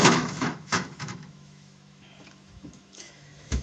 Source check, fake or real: fake